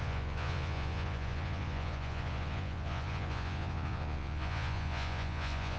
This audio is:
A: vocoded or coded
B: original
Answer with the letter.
A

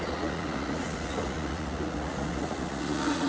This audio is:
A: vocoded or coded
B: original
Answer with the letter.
A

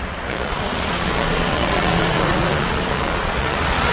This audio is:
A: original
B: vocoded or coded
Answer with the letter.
B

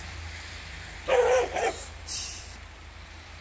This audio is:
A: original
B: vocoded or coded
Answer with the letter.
B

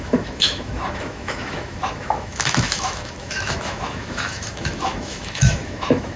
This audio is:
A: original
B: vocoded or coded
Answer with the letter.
B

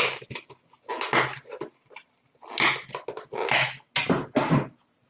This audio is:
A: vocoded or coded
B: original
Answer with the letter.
B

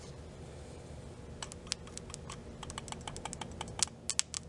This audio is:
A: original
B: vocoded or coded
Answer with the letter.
A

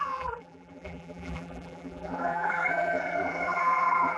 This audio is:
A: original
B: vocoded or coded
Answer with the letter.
B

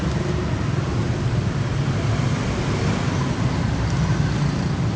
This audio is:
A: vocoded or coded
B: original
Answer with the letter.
B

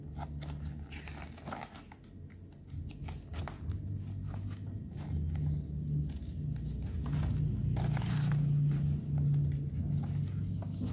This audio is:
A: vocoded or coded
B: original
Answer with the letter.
B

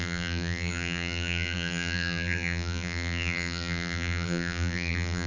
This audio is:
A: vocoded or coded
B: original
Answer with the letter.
A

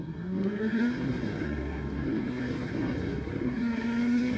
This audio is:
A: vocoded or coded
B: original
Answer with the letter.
A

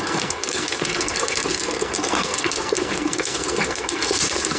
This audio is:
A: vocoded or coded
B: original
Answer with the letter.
A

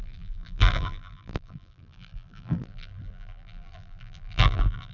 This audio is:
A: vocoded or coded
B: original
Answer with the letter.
A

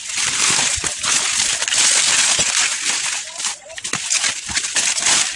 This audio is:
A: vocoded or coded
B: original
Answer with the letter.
B